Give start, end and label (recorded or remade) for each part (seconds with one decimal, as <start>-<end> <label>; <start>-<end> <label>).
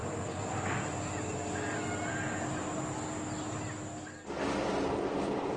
0.0-0.5 remade; 0.5-5.6 recorded